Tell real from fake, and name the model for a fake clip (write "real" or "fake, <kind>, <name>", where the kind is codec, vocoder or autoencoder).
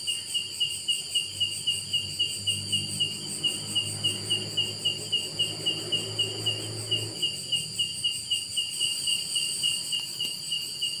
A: real